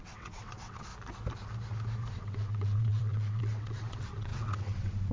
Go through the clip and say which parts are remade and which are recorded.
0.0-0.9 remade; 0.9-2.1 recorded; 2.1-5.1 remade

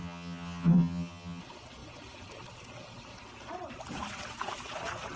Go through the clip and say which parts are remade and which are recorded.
0.0-1.4 remade; 1.4-5.2 recorded

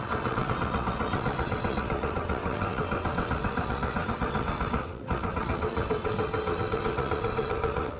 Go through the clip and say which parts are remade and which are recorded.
0.0-8.0 remade

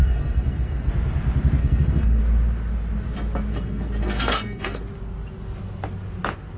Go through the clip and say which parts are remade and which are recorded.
0.0-0.9 remade; 0.9-1.6 recorded; 1.6-2.2 remade; 2.2-3.5 recorded; 3.5-4.8 remade; 4.8-6.6 recorded

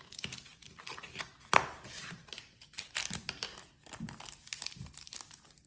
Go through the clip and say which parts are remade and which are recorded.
0.0-5.7 recorded

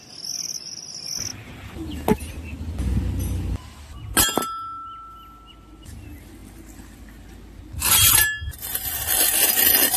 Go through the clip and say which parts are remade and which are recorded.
0.0-10.0 recorded